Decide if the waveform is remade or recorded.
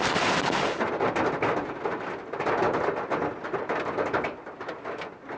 recorded